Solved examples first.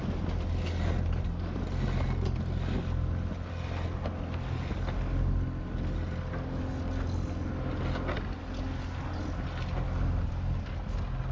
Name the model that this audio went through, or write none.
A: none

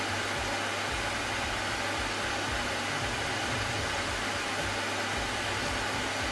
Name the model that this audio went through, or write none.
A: none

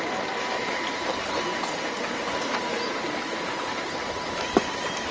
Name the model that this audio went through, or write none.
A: vocoder, BigVGAN v2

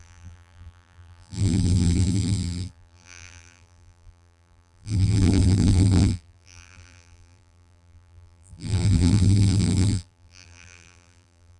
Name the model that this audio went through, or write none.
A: vocoder, BigVGAN v2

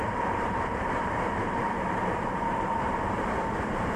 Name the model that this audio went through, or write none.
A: vocoder, BigVGAN v2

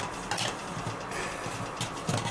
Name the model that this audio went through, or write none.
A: none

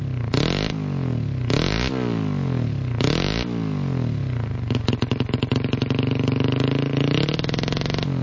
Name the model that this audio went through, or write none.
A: none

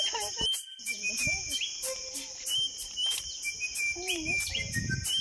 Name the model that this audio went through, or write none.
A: vocoder, BigVGAN v2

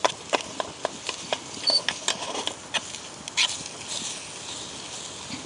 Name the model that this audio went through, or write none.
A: none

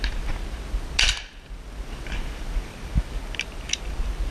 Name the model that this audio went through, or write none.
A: none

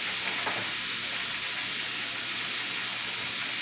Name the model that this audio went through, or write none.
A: none